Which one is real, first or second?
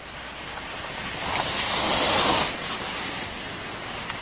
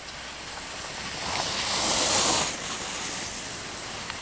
first